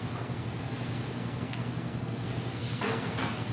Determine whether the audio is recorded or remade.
remade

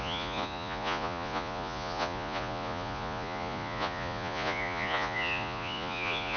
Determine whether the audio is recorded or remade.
remade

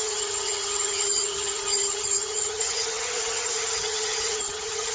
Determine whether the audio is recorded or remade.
remade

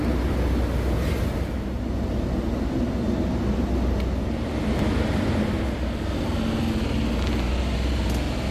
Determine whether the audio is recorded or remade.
recorded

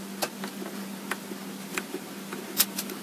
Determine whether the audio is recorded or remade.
recorded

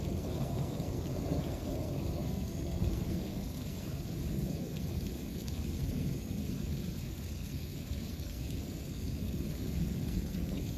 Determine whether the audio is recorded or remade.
remade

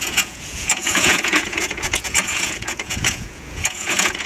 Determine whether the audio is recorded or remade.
remade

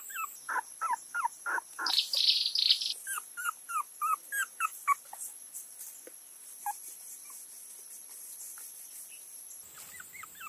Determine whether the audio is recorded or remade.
recorded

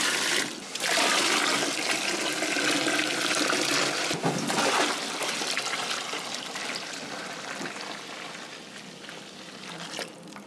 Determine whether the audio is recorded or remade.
recorded